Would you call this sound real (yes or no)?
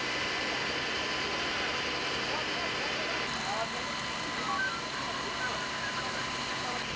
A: yes